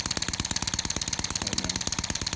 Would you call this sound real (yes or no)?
yes